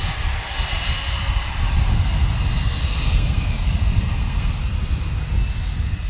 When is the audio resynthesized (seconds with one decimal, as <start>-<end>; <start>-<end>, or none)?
2.8-4.6